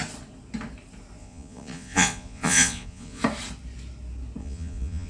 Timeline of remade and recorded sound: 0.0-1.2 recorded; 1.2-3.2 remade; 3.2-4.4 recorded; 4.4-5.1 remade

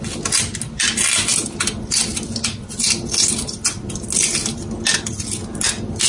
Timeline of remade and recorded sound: 0.0-6.1 recorded

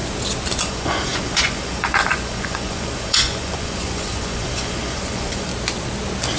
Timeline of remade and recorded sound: 0.0-0.6 recorded; 0.6-5.5 remade; 5.5-6.4 recorded

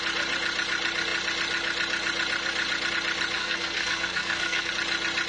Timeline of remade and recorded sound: 0.0-3.4 recorded; 3.4-4.7 remade; 4.7-5.3 recorded